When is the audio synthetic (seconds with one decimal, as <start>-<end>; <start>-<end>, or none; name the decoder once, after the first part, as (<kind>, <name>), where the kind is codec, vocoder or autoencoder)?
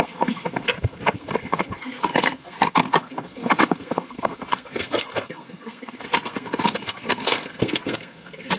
0.0-8.6 (codec, SNAC)